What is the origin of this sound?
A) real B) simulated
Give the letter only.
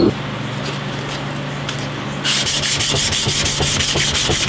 A